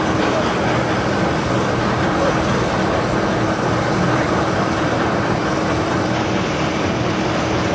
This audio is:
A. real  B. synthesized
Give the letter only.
B